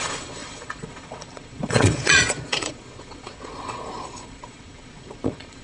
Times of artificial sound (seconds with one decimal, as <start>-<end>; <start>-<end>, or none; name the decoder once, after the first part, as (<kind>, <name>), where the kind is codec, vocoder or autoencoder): 0.0-5.6 (vocoder, Vocos)